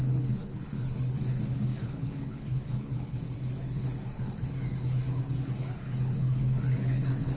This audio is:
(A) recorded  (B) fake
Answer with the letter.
B